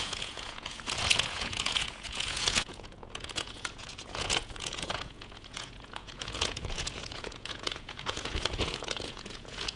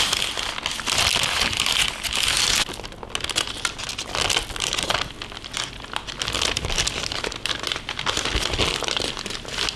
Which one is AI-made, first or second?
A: first